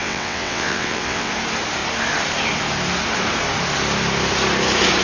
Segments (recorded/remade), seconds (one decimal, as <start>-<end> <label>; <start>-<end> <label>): 0.0-1.3 remade; 1.3-5.0 recorded